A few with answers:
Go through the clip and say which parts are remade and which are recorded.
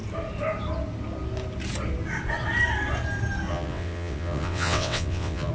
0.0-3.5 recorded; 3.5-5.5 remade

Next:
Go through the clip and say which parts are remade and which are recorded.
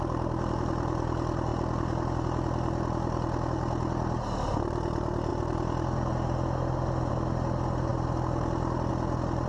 0.0-9.5 recorded